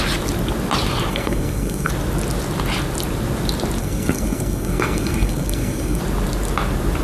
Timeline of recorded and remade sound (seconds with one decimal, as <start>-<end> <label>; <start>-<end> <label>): 0.0-1.1 recorded; 1.1-1.9 remade; 1.9-3.8 recorded; 3.8-6.0 remade; 6.0-7.0 recorded